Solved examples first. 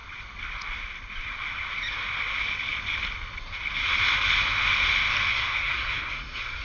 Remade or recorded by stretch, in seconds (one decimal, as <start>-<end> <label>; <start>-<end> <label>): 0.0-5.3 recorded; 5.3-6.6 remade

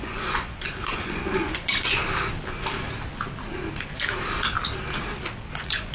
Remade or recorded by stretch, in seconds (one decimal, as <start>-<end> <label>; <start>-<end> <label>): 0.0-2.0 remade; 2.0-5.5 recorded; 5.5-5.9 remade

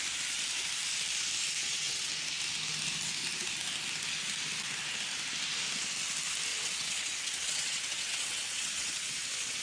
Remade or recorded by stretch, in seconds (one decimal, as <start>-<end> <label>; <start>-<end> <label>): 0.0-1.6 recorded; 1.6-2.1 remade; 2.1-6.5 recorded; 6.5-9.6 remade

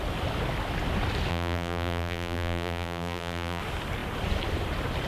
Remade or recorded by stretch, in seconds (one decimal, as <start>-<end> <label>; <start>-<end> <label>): 0.0-1.3 recorded; 1.3-3.6 remade; 3.6-5.1 recorded